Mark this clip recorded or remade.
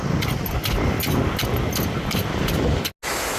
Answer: recorded